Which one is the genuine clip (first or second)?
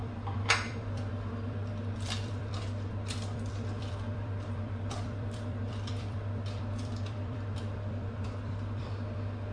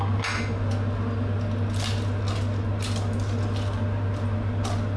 second